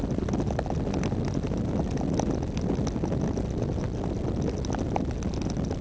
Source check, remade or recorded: recorded